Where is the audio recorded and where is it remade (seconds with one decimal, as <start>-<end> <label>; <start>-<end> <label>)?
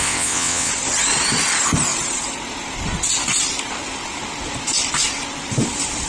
0.0-0.7 remade; 0.7-6.1 recorded